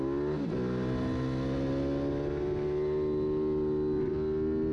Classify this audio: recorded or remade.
recorded